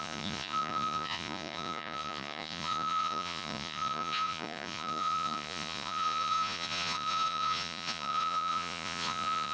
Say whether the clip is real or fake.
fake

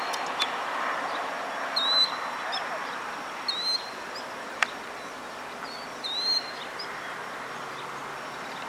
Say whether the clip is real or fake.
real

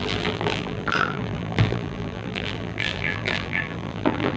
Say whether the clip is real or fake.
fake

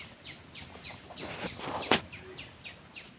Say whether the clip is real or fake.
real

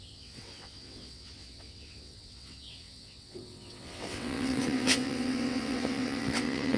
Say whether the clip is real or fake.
fake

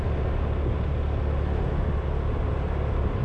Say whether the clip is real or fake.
real